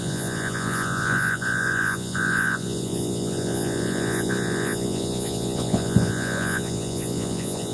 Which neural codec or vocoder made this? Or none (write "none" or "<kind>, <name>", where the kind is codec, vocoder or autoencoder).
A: vocoder, Vocos